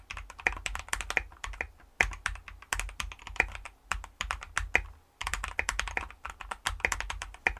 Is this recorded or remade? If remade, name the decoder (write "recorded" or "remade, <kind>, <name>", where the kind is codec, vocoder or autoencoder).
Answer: recorded